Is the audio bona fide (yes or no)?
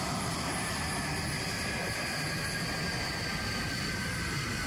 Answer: yes